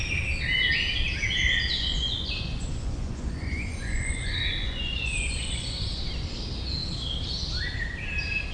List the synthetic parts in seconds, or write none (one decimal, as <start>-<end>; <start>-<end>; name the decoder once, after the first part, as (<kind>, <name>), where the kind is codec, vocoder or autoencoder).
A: 1.8-6.0 (vocoder, Vocos)